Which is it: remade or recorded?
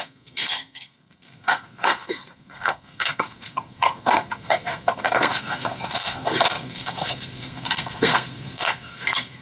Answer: remade